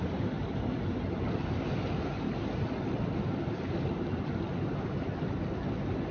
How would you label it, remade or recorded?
recorded